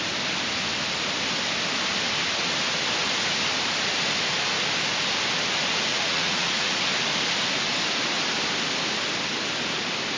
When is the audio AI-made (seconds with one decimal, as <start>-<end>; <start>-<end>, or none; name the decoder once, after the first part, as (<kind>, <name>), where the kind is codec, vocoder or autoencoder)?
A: 5.9-6.8 (vocoder, Vocos)